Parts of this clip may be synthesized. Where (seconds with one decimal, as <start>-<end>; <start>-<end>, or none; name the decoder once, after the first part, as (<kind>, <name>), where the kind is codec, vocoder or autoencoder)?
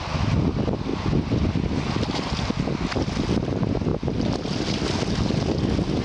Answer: none